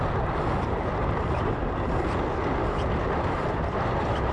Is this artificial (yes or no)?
no